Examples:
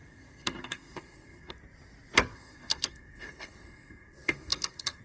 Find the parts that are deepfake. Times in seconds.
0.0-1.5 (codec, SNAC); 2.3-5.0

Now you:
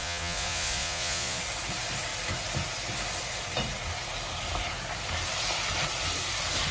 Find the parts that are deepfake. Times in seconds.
0.0-1.4 (vocoder, Vocos)